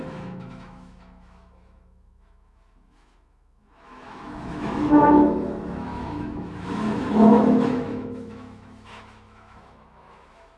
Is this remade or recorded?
remade